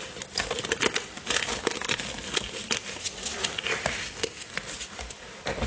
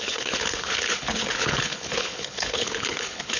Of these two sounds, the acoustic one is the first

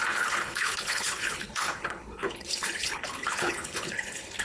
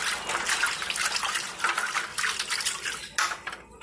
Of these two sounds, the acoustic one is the second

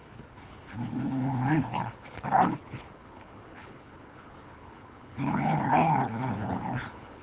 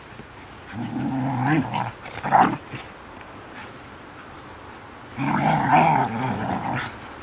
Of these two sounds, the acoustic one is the second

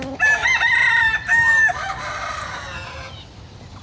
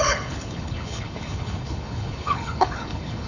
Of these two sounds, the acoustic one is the first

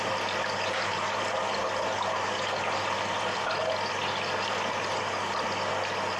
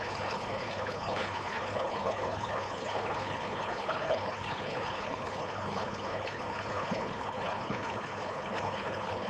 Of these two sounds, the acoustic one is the first